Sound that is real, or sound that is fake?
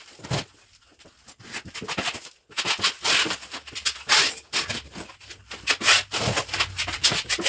real